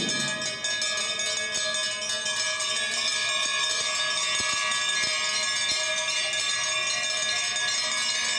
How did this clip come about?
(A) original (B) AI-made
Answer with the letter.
A